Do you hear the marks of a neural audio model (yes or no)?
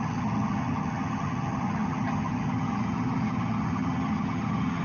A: yes